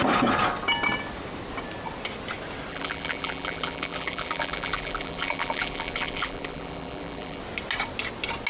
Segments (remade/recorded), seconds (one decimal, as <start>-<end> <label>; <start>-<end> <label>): 0.0-2.7 recorded; 2.7-7.4 remade; 7.4-8.5 recorded